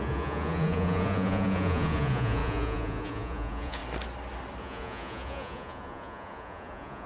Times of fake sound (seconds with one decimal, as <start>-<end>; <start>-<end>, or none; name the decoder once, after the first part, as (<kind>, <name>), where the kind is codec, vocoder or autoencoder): 0.0-3.8 (vocoder, Vocos); 4.6-7.1